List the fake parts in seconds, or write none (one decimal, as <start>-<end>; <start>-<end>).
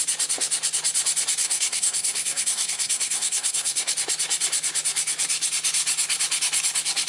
1.4-3.9